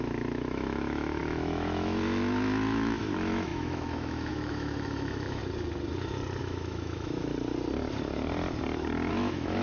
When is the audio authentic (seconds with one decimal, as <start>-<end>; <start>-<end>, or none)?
5.4-6.4; 7.3-9.1